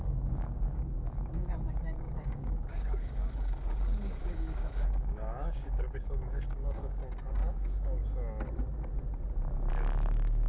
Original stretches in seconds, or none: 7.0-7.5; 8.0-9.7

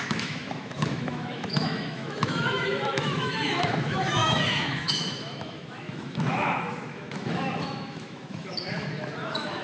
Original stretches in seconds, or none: none

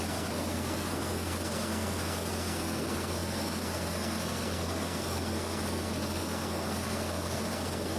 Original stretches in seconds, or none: none

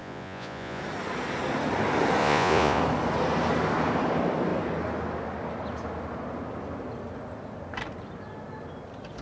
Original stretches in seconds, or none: 0.8-2.2; 2.8-9.2